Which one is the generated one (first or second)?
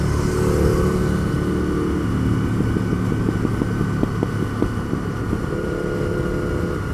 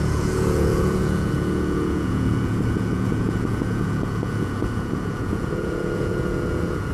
second